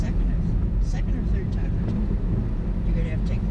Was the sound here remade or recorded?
recorded